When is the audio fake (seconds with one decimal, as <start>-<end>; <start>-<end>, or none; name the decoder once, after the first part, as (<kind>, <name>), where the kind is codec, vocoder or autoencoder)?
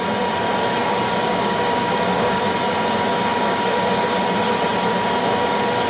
0.8-2.4 (codec, DAC); 3.3-3.9